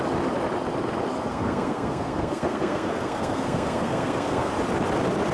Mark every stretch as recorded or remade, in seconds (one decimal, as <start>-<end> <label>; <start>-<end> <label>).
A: 0.0-1.3 recorded; 1.3-4.5 remade; 4.5-5.3 recorded